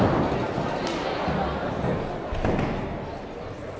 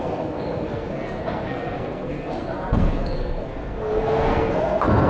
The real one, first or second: first